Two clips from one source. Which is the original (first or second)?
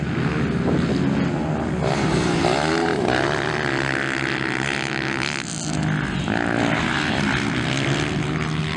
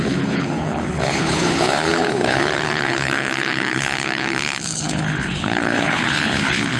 first